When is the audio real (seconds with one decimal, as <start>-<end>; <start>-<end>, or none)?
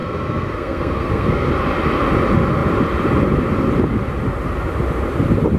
1.5-5.6